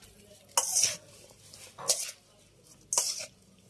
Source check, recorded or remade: recorded